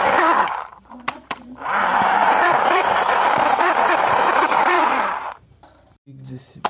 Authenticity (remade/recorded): remade